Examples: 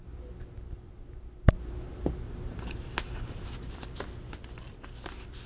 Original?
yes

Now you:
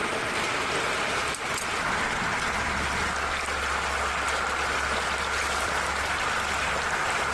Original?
yes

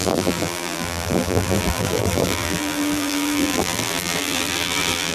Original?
no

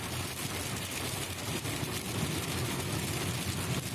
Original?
yes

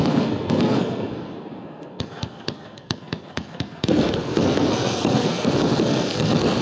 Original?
no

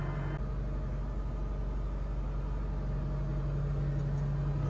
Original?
yes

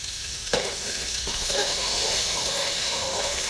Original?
no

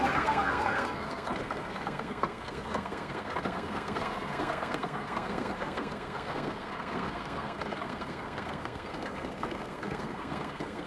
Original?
no